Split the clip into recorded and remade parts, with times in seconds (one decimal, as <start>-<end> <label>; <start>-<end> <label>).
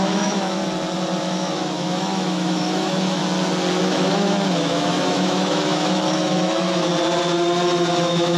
0.0-0.6 remade; 0.6-1.2 recorded; 1.2-3.2 remade; 3.2-3.8 recorded; 3.8-6.9 remade; 6.9-8.0 recorded; 8.0-8.4 remade